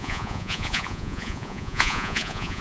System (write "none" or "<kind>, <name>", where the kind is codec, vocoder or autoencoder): vocoder, Vocos